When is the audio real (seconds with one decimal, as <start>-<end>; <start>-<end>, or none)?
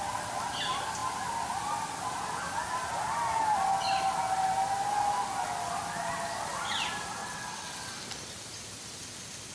0.0-7.2; 7.9-9.5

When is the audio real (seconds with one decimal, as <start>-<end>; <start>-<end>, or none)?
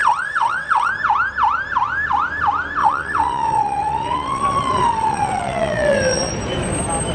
0.9-2.8; 6.3-7.1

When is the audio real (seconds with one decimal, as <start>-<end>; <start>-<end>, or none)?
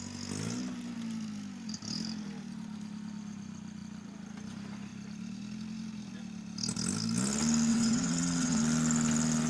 0.0-7.7; 8.6-9.5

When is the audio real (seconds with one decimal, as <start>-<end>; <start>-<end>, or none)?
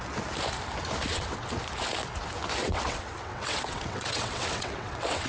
0.0-1.1; 1.6-2.6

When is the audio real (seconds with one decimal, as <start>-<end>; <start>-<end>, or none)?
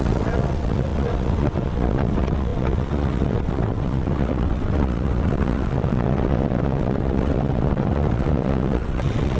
none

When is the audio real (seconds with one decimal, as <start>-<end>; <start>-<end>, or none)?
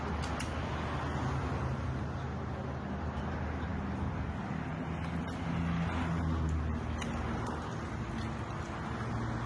0.0-9.5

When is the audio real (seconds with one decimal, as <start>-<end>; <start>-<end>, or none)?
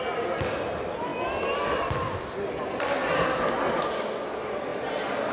0.0-5.3